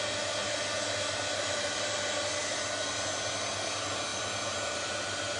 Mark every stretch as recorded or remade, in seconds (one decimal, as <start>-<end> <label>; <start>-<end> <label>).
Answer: 0.0-5.4 recorded